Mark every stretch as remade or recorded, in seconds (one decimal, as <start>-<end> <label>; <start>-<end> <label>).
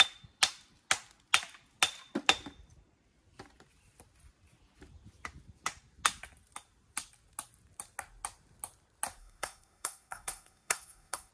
0.0-9.2 recorded; 9.2-11.3 remade